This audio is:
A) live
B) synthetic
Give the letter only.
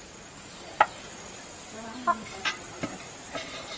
B